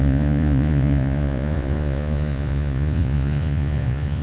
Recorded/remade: remade